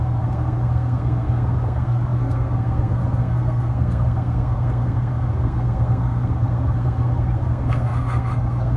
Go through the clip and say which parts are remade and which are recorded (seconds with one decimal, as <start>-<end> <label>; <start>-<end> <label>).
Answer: 0.0-8.8 remade

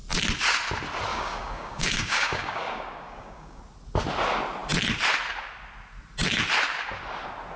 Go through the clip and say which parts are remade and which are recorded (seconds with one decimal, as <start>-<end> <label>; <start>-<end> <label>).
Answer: 0.0-1.1 recorded; 1.1-3.6 remade; 3.6-7.6 recorded

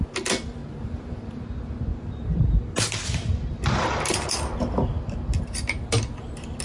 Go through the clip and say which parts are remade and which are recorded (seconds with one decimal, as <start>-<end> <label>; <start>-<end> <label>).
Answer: 0.0-6.6 recorded

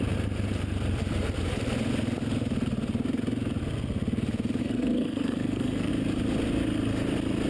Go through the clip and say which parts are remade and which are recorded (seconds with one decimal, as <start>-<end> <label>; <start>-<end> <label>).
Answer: 0.0-4.6 recorded; 4.6-5.9 remade; 5.9-7.5 recorded

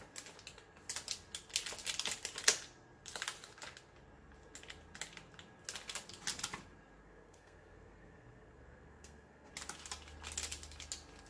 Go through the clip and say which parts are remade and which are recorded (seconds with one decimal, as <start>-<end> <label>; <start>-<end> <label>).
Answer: 0.0-7.0 recorded; 7.0-9.5 remade; 9.5-11.3 recorded

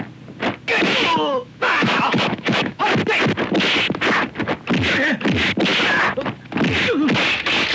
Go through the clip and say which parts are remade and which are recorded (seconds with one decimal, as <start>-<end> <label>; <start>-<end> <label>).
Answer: 0.0-0.7 recorded; 0.7-2.8 remade; 2.8-7.7 recorded

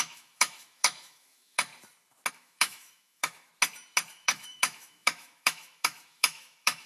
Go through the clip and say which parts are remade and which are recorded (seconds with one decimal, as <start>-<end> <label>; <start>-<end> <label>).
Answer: 0.0-1.7 remade; 1.7-2.3 recorded; 2.3-3.5 remade; 3.5-4.1 recorded; 4.1-6.9 remade